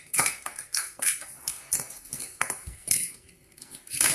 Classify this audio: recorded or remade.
remade